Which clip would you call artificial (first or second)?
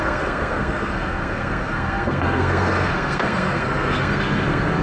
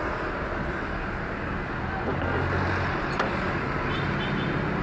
first